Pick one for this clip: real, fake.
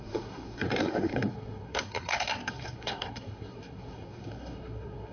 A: fake